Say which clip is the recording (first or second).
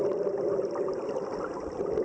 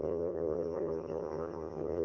first